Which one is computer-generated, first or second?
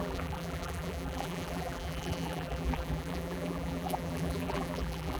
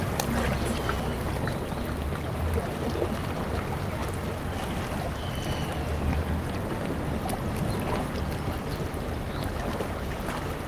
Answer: first